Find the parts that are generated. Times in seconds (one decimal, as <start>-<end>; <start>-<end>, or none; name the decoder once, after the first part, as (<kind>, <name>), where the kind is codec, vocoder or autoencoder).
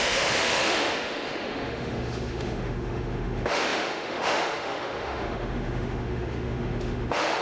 0.0-7.4 (autoencoder, DAC-VAE)